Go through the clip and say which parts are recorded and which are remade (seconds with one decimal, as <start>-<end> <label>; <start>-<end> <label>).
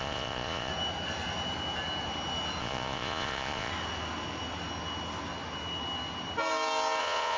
0.0-0.7 remade; 0.7-2.6 recorded; 2.6-3.7 remade; 3.7-7.0 recorded; 7.0-7.4 remade